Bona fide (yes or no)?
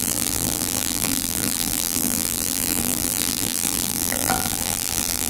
no